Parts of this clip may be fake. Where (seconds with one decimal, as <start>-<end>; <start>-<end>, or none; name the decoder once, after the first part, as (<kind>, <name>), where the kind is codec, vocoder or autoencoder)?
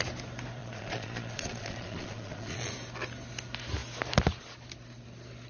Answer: 0.6-2.7 (vocoder, Vocos)